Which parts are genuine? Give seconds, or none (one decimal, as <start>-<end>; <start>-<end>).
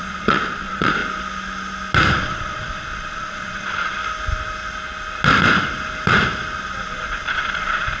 1.0-2.2; 4.0-6.9